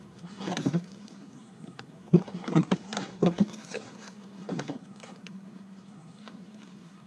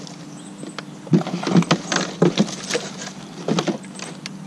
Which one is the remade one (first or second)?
first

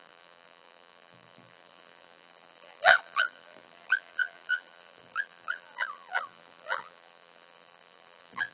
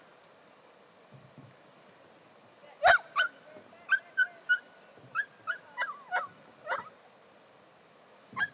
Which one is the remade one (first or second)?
first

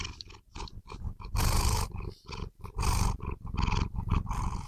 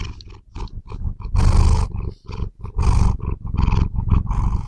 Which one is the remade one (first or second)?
first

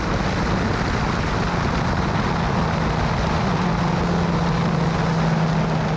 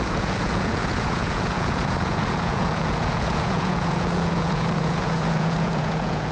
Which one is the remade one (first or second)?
second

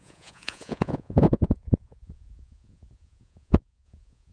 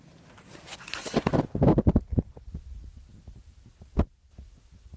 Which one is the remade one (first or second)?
first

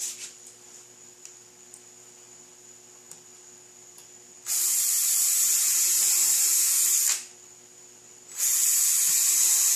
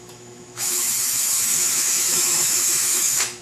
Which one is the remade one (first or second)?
second